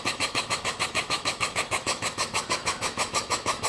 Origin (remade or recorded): remade